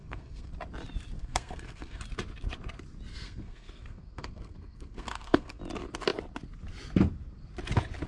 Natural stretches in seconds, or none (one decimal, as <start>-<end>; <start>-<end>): 0.5-1.2; 2.0-3.1; 5.6-8.1

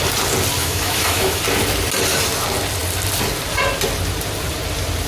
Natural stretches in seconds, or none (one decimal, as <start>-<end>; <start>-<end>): 0.0-0.6; 1.4-5.1